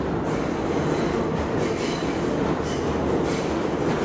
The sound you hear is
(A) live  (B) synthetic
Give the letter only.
A